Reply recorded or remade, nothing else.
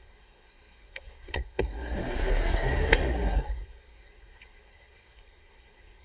remade